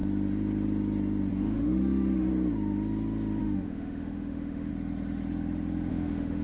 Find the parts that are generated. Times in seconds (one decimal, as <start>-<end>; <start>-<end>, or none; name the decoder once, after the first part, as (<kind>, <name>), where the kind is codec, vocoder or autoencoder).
1.3-2.3 (autoencoder, DAC-VAE); 3.4-4.7; 5.9-6.4